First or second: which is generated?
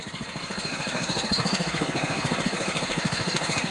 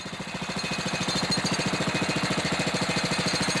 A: first